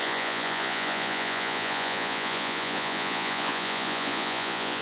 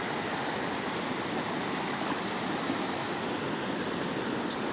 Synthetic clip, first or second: first